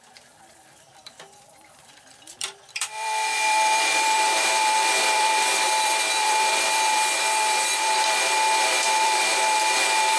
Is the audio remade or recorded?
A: remade